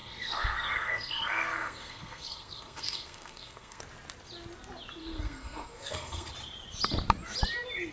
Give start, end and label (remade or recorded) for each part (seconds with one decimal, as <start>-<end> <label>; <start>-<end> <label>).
0.0-3.8 remade; 3.8-5.0 recorded; 5.0-6.3 remade; 6.3-7.9 recorded